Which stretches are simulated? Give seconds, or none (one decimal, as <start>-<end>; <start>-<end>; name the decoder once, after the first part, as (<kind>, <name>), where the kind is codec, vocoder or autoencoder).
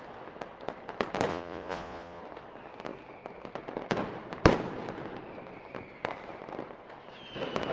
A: 1.3-2.2 (vocoder, Vocos)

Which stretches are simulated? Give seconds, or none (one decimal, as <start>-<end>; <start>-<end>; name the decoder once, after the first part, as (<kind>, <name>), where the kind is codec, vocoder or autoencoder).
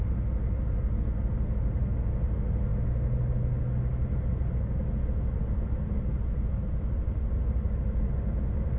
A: none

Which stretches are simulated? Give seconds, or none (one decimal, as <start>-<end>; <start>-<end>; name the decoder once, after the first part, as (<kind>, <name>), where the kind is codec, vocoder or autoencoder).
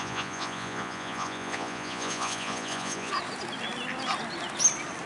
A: 0.0-3.1 (vocoder, Vocos)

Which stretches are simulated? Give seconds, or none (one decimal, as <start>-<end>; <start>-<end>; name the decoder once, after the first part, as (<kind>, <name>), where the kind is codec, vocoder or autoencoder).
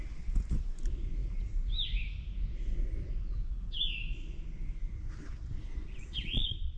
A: 5.7-6.8 (vocoder, Vocos)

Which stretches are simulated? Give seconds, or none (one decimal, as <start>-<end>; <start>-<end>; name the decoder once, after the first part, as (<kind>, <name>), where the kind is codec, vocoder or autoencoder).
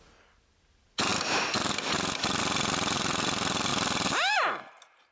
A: none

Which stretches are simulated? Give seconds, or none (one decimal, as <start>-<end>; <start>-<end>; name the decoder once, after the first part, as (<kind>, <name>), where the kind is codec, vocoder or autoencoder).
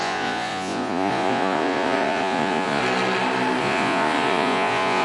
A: 0.0-2.8 (vocoder, Vocos); 3.6-5.0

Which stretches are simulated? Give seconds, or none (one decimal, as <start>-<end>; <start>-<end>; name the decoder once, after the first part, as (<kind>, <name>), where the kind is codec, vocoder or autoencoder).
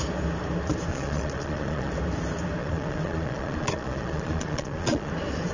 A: 0.9-1.9 (vocoder, Vocos); 2.6-5.1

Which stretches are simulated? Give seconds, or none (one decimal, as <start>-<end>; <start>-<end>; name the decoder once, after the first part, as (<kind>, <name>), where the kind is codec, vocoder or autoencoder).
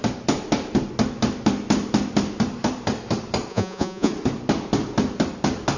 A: 3.5-4.1 (vocoder, Vocos)